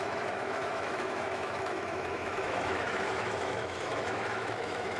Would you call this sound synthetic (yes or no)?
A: yes